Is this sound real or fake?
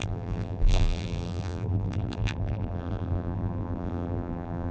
fake